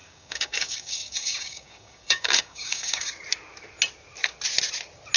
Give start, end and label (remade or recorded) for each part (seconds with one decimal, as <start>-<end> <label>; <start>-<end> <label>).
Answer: 0.0-3.1 remade; 3.1-5.2 recorded